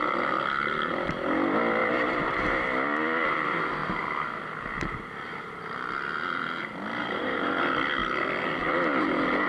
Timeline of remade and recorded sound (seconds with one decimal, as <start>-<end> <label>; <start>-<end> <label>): 0.0-1.8 recorded; 1.8-2.3 remade; 2.3-7.0 recorded; 7.0-7.5 remade; 7.5-9.5 recorded